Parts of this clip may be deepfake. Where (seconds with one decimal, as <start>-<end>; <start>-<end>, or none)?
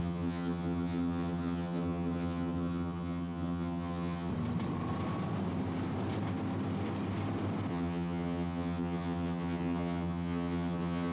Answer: 0.0-4.3; 7.7-11.1